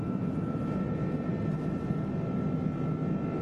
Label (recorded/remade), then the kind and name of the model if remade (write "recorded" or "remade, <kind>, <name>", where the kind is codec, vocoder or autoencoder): recorded